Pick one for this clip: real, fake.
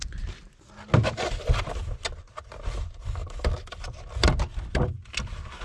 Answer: real